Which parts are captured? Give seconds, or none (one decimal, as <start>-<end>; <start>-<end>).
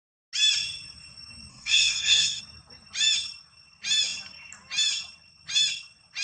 0.0-1.5; 2.4-6.2